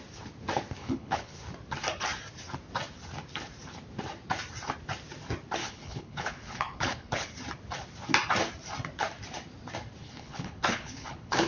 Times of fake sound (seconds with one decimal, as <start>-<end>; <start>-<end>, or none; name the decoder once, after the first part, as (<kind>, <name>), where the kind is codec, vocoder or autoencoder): 0.8-1.4 (codec, HILCodec); 5.6-7.3; 10.0-11.5